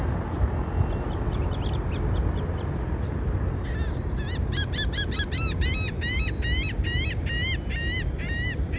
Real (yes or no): yes